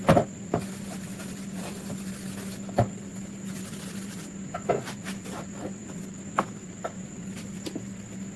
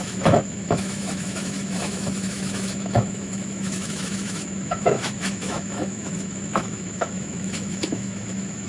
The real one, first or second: first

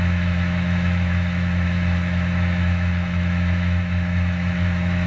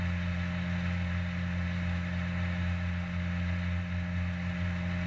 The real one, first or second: second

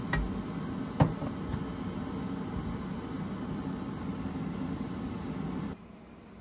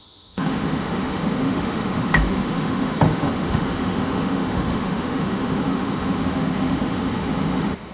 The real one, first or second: first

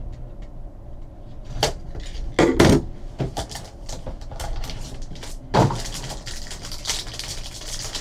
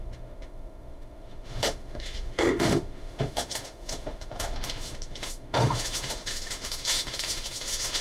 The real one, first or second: first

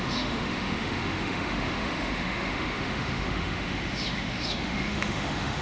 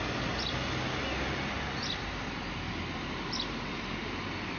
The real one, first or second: second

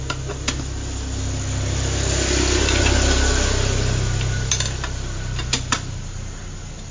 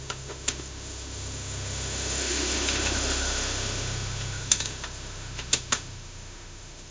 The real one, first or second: first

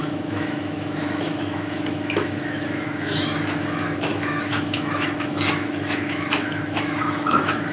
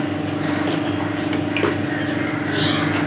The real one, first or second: second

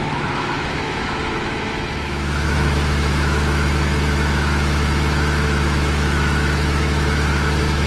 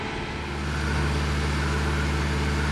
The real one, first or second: second